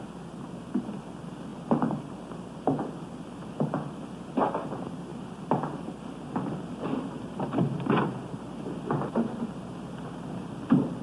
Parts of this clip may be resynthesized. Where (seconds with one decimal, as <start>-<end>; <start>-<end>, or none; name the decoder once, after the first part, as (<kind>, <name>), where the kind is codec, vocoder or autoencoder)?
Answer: none

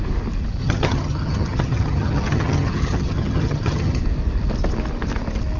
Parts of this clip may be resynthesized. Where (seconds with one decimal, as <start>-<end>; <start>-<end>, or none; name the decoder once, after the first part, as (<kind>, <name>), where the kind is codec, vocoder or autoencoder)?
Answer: 0.6-4.0 (vocoder, HiFi-GAN)

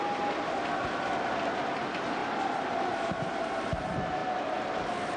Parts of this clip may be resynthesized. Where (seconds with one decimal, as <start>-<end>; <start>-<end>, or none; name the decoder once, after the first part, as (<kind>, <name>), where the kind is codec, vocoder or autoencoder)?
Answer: none

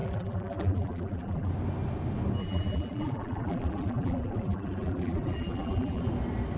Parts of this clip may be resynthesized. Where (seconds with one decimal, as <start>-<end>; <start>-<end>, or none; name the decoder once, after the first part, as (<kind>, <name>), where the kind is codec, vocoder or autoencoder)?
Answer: 0.0-1.5 (vocoder, BigVGAN v2); 2.4-6.1

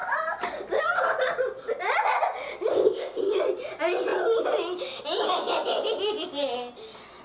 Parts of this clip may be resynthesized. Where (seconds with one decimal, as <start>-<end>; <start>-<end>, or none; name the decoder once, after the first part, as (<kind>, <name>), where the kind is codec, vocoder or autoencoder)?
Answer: 2.7-3.3 (codec, ZipCodec)